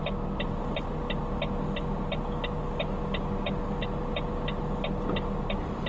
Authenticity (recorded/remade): recorded